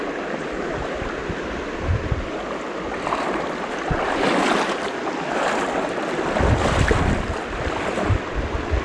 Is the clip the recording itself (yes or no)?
yes